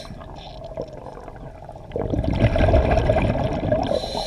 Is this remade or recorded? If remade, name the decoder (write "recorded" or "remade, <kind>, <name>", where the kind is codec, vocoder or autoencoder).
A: recorded